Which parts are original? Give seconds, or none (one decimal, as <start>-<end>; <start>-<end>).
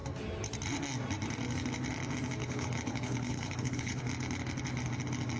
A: 0.0-2.4; 4.0-5.4